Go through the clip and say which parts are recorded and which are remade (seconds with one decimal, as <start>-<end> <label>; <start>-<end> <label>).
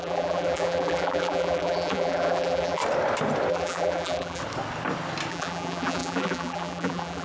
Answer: 0.0-2.8 remade; 2.8-3.5 recorded; 3.5-4.4 remade; 4.4-5.3 recorded; 5.3-7.2 remade